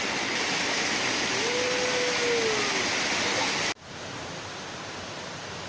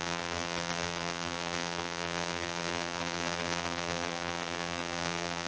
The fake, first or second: second